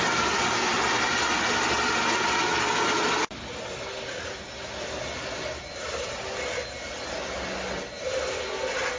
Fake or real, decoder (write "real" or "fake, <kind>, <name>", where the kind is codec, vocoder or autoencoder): real